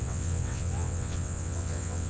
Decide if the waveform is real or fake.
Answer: fake